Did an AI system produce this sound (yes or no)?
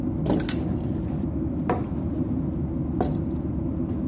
no